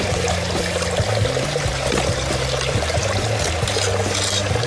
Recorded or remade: recorded